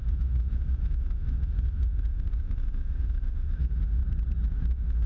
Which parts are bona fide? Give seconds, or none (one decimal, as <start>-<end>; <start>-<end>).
4.0-4.5